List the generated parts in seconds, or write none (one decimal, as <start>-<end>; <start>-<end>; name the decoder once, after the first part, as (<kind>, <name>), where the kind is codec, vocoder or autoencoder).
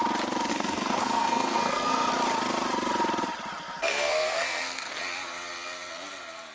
0.5-2.1 (codec, SNAC); 3.6-5.0